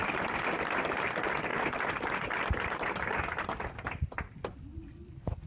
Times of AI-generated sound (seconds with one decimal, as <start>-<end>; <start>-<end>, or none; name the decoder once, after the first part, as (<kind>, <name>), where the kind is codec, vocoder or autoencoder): 0.0-5.5 (vocoder, BigVGAN v2)